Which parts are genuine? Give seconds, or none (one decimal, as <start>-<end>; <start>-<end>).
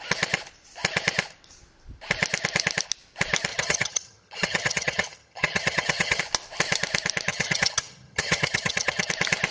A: 0.0-3.5; 6.2-7.3; 9.1-9.5